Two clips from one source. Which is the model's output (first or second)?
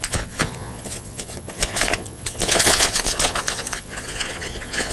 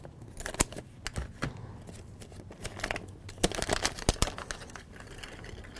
first